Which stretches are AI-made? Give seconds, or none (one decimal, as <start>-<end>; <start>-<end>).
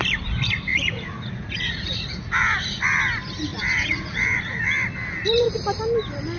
0.7-2.8; 3.5-4.6